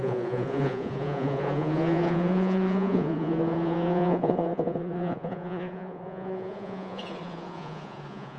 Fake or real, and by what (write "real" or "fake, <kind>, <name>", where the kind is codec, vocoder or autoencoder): fake, vocoder, Vocos